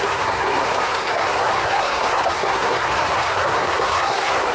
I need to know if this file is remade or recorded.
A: remade